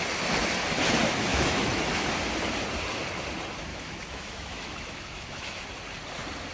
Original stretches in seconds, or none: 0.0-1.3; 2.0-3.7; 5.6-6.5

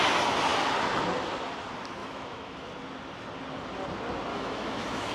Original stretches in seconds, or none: 0.0-2.0; 2.7-4.3

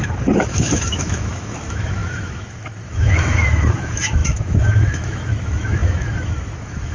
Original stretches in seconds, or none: none

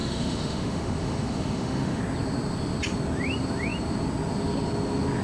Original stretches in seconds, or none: 2.0-5.2

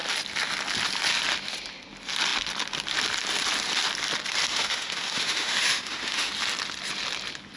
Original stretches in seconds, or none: 0.0-4.5; 6.3-7.6

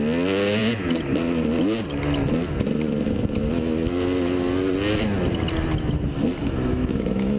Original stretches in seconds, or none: 0.0-6.4